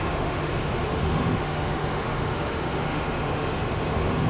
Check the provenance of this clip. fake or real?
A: fake